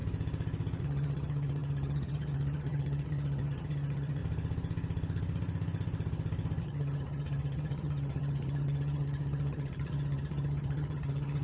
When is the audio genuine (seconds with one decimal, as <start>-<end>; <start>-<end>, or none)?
0.0-0.8; 4.2-6.6